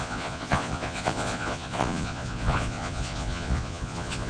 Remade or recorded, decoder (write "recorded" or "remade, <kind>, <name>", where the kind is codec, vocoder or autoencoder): remade, vocoder, Vocos